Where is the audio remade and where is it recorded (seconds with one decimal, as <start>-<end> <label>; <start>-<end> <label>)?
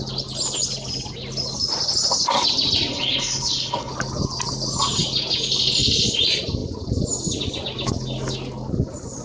0.0-2.9 recorded; 2.9-3.9 remade; 3.9-9.2 recorded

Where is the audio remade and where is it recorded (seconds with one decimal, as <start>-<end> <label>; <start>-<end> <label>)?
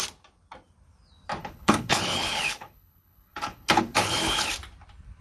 0.0-1.4 recorded; 1.4-4.5 remade; 4.5-5.2 recorded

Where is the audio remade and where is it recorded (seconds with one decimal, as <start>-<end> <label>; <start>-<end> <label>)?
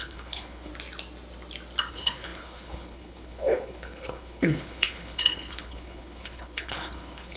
0.0-0.7 remade; 0.7-1.9 recorded; 1.9-7.4 remade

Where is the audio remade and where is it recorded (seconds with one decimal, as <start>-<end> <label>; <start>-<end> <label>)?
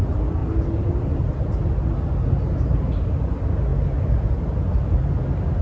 0.0-5.6 recorded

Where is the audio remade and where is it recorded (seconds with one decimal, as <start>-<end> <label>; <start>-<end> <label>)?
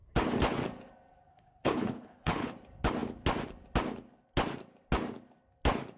0.0-1.3 recorded; 1.3-2.5 remade; 2.5-6.0 recorded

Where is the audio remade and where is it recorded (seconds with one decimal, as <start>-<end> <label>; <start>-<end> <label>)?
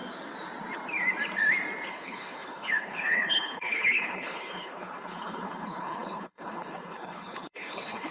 0.0-1.9 recorded; 1.9-8.1 remade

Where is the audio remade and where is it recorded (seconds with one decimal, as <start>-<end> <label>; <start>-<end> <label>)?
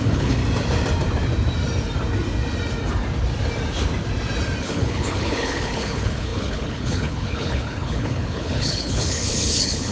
0.0-0.4 remade; 0.4-4.6 recorded; 4.6-9.9 remade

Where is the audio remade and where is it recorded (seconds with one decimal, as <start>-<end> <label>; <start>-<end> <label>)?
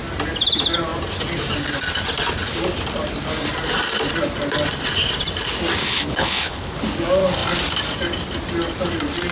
0.0-5.8 recorded; 5.8-6.7 remade; 6.7-9.3 recorded